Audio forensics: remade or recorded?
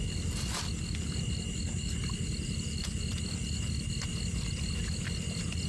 recorded